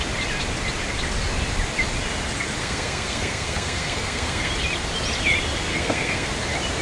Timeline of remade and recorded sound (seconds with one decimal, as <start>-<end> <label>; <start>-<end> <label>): 0.0-2.6 recorded; 2.6-4.5 remade; 4.5-5.7 recorded; 5.7-6.3 remade; 6.3-6.8 recorded